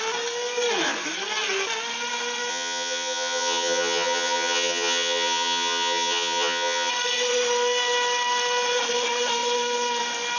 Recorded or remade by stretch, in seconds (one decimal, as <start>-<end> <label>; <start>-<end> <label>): 0.0-2.5 recorded; 2.5-6.9 remade; 6.9-10.4 recorded